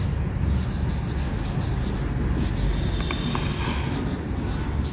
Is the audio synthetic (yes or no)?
no